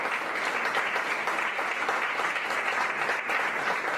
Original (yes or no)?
yes